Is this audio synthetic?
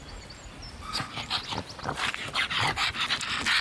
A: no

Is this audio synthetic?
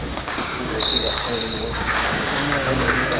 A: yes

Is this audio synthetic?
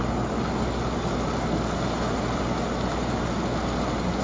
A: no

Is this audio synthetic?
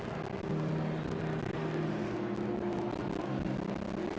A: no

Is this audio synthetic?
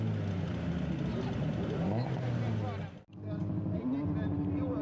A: no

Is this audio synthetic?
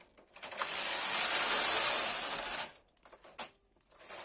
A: no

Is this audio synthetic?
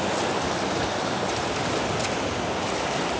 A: no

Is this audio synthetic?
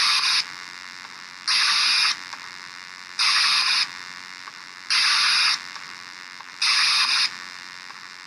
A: yes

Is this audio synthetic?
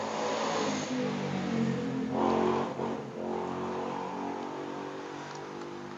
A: no